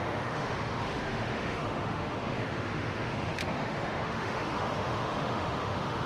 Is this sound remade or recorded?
remade